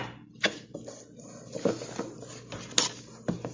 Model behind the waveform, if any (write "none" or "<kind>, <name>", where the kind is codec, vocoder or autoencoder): none